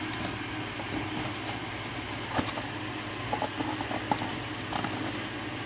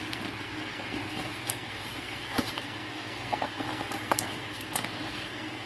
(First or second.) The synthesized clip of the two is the second